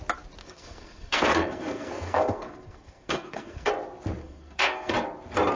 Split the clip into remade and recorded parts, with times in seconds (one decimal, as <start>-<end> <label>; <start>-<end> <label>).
0.0-0.4 recorded; 0.4-3.7 remade; 3.7-4.2 recorded; 4.2-4.9 remade; 4.9-5.5 recorded